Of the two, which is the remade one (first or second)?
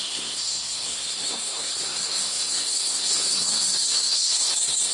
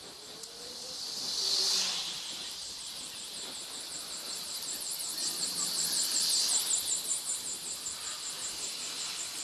first